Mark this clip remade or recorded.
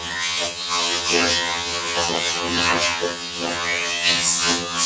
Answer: remade